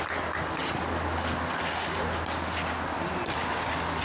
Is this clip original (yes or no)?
yes